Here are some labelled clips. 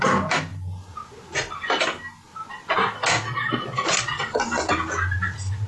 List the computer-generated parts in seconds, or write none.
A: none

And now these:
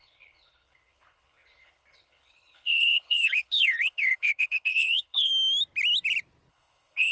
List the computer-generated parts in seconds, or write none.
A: 0.0-5.3 (codec, HILCodec); 6.5-7.1

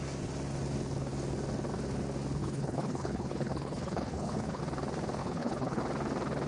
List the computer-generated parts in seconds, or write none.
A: 2.4-4.6 (codec, HILCodec); 5.2-5.8

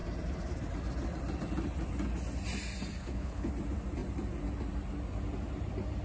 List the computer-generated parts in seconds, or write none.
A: 3.0-3.5 (codec, HILCodec)

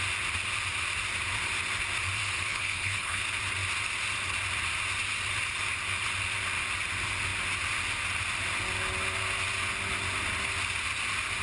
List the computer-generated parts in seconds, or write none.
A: 2.5-3.2 (codec, HILCodec)

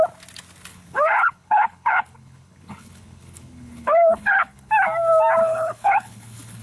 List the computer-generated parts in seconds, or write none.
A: 0.7-4.7 (codec, HILCodec); 5.4-6.6

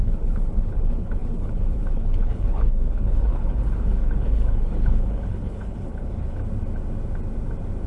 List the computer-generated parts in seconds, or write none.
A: 0.0-6.4 (codec, HILCodec)